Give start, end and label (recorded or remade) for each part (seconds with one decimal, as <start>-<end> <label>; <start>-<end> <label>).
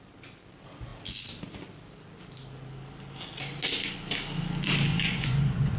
0.0-4.9 recorded; 4.9-5.8 remade